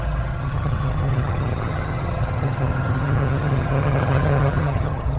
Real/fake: fake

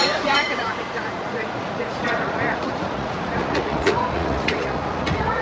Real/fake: fake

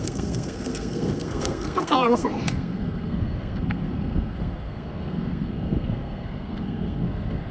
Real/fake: fake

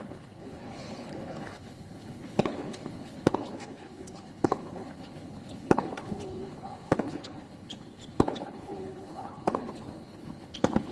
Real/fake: fake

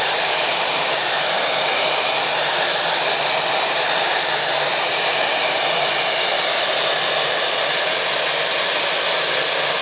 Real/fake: fake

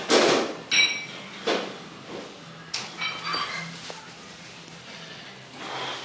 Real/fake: real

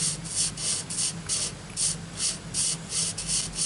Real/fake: real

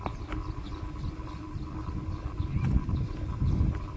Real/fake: real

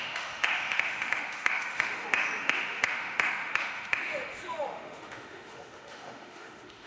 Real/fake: fake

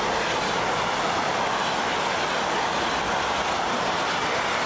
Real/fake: real